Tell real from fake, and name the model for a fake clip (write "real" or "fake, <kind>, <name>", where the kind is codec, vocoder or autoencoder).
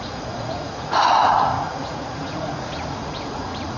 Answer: fake, vocoder, Vocos